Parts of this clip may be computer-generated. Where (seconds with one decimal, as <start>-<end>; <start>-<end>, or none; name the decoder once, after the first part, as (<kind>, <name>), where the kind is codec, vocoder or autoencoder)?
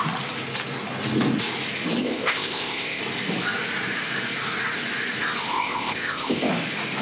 2.0-3.0 (codec, ZipCodec); 5.5-6.5